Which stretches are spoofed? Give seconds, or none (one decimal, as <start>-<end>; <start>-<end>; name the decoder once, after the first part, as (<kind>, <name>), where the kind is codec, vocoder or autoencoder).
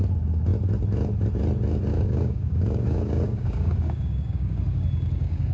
1.9-5.5 (codec, DAC)